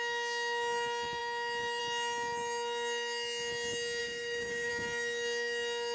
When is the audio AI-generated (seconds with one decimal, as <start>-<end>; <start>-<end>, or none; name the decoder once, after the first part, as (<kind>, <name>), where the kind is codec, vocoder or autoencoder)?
4.0-4.7 (codec, DAC)